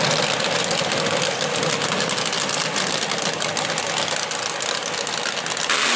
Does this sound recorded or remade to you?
recorded